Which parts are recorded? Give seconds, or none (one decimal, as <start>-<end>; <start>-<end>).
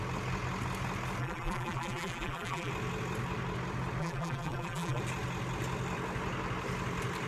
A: 0.0-1.2; 2.7-4.0; 5.0-7.3